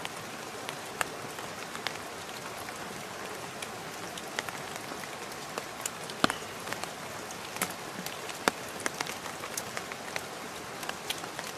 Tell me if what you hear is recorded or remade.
recorded